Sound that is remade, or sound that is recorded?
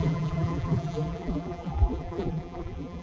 remade